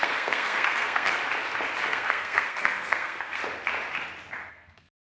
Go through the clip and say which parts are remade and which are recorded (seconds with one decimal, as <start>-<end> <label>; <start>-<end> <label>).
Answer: 0.0-1.2 remade; 1.2-1.9 recorded; 1.9-3.4 remade; 3.4-4.5 recorded; 4.5-5.1 remade